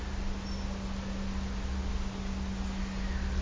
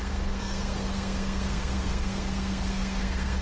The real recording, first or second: first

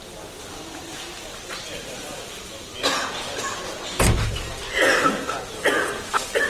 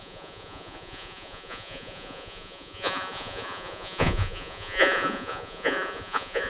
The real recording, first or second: first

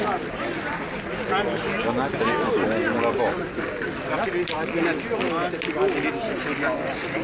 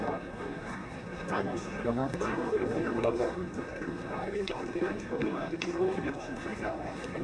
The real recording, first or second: first